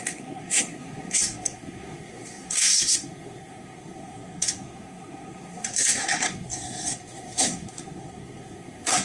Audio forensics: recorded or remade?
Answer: remade